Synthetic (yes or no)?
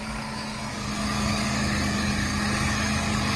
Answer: yes